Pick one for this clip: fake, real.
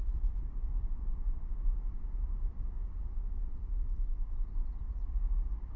fake